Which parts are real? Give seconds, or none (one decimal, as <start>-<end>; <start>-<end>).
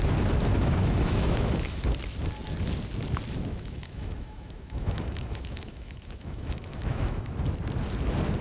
0.0-0.4; 1.8-3.5; 7.3-8.4